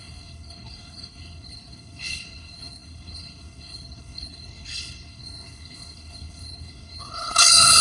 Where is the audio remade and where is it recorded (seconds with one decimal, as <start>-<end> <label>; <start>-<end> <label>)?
0.0-7.8 remade